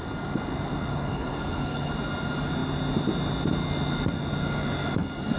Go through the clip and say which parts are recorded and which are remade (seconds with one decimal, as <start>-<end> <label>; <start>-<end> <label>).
0.0-0.9 recorded; 0.9-1.9 remade; 1.9-5.4 recorded